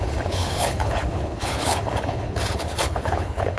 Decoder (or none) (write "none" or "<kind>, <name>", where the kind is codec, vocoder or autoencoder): codec, HILCodec